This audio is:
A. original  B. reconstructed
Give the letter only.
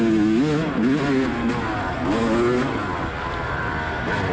A